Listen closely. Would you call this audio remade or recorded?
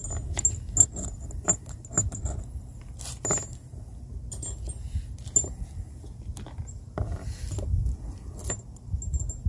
recorded